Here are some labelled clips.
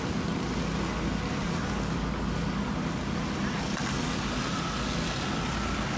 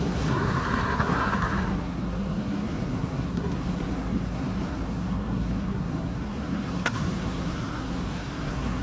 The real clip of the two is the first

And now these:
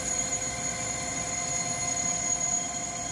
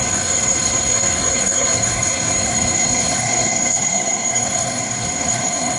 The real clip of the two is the first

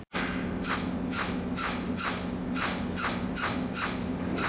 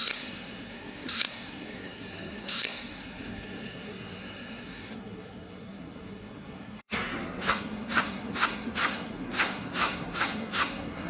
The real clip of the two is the first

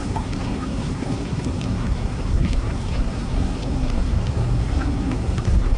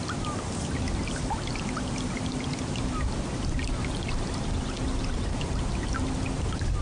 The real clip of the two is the second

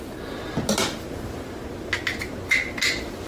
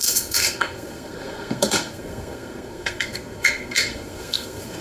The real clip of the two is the first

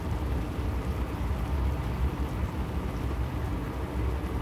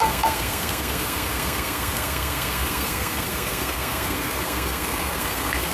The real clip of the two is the first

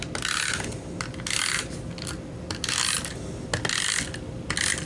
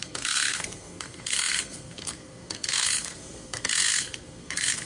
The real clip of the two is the first